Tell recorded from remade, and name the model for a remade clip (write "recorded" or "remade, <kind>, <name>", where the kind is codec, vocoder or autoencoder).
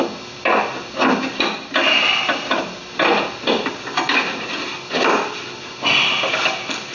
recorded